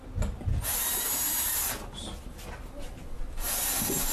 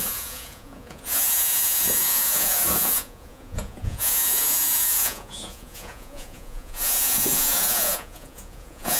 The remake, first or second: second